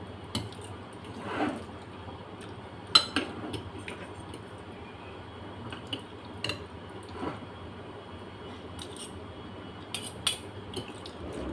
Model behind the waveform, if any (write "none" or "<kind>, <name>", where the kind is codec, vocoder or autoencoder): none